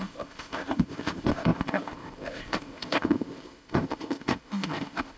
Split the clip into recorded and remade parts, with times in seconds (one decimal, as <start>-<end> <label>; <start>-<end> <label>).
0.0-5.2 remade